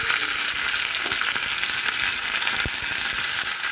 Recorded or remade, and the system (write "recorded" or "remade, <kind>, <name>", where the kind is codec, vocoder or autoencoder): recorded